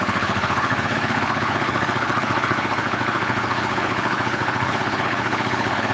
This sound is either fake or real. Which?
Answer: fake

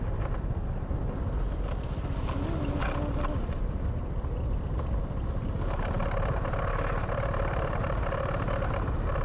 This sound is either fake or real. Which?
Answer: real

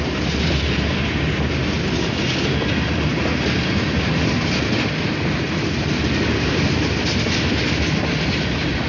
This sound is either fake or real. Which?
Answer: real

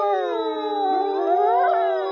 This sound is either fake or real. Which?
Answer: real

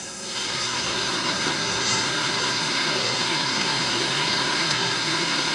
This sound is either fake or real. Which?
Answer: fake